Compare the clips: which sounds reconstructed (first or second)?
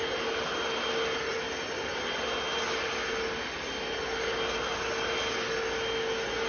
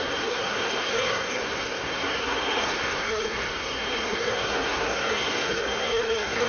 second